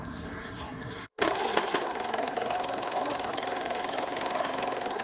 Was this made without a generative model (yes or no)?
no